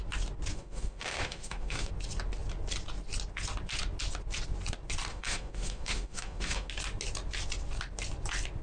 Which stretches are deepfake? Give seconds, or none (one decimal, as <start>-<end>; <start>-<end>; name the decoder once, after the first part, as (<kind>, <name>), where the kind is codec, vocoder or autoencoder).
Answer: 0.5-1.9 (autoencoder, DAC-VAE); 5.1-6.7